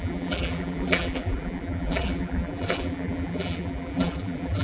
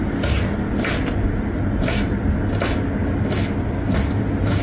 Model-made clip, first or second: first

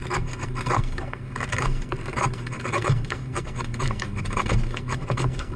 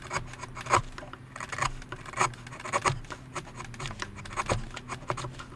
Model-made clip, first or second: first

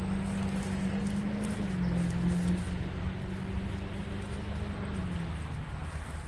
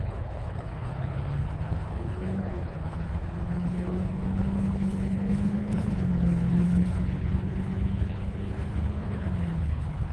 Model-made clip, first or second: second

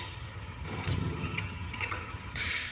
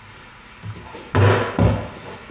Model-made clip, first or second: first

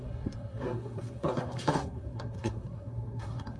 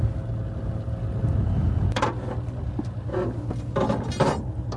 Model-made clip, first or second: first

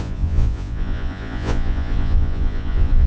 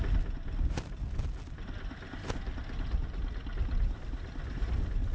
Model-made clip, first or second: first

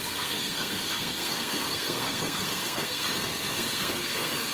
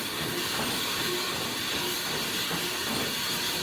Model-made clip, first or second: first